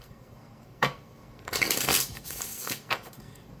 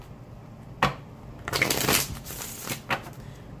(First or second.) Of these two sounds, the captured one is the second